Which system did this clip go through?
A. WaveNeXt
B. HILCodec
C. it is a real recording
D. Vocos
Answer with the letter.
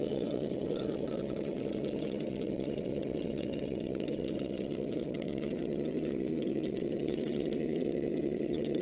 A